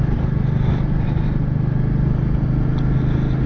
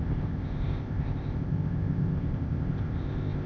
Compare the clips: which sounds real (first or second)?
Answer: first